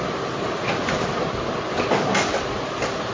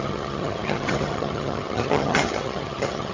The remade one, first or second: second